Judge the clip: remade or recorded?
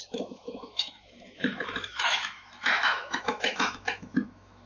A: remade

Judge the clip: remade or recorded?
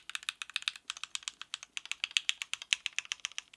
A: recorded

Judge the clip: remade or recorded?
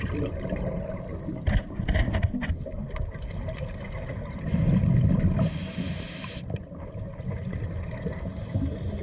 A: recorded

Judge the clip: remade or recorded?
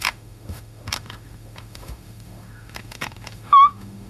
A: remade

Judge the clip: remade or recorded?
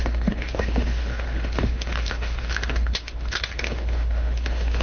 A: remade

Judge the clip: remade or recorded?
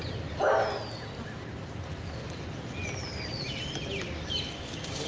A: recorded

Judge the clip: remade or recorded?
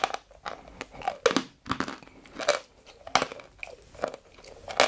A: recorded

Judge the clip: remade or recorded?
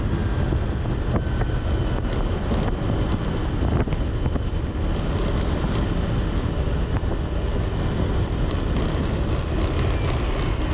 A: recorded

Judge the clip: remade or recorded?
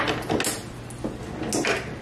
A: recorded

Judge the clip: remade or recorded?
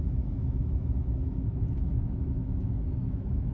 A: remade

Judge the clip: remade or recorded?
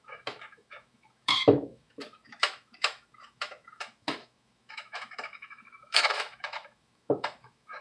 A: remade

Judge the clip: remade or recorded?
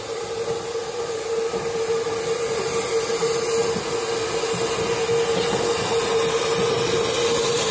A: recorded